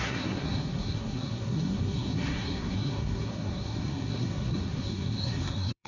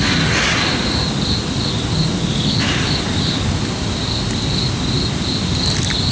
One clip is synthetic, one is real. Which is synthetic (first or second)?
first